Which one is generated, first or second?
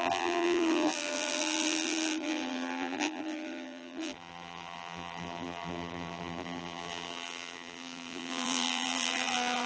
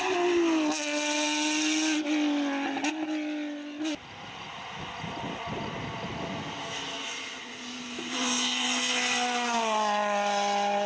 first